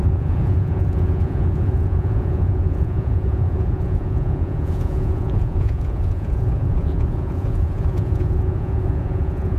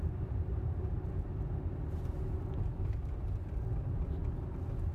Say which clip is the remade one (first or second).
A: first